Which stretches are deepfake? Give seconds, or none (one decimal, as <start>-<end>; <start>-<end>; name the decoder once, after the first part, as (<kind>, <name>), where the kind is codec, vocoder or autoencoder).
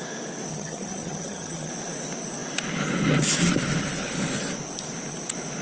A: 0.5-1.7 (vocoder, HiFi-GAN)